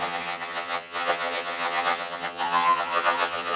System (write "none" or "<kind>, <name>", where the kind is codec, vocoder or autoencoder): vocoder, HiFi-GAN